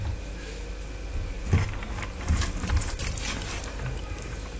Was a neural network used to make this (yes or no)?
no